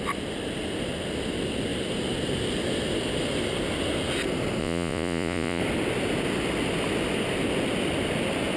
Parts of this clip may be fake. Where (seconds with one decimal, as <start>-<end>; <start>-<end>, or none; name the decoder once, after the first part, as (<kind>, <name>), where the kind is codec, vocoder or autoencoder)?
4.6-5.6 (vocoder, Vocos)